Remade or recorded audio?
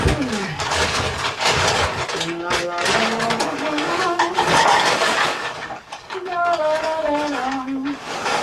remade